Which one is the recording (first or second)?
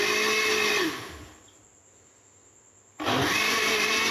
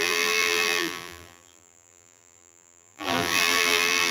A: first